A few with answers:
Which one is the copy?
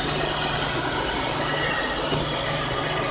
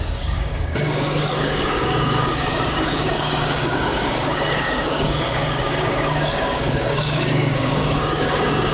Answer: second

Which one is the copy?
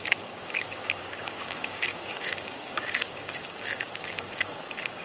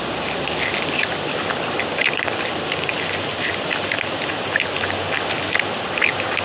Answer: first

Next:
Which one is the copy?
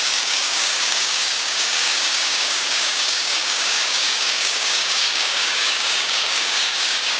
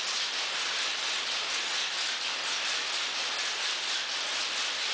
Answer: first